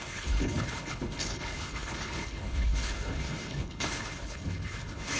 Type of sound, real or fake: fake